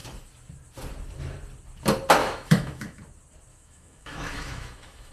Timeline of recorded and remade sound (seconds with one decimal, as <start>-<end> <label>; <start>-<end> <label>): 0.0-2.2 recorded; 2.2-3.0 remade; 3.0-3.5 recorded; 3.5-5.1 remade